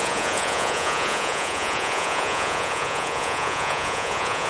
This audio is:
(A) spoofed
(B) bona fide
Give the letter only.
A